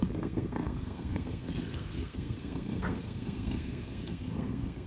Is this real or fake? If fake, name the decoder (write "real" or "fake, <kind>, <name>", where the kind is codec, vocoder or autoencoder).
fake, codec, SNAC